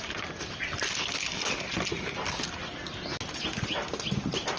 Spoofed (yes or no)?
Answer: no